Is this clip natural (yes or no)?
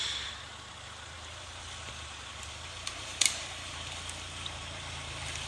no